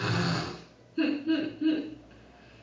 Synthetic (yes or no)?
no